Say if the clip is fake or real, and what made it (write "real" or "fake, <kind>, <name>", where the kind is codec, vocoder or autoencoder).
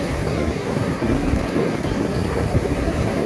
fake, codec, SNAC